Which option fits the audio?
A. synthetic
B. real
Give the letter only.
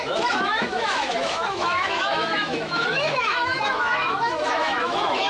A